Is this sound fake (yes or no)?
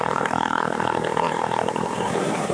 yes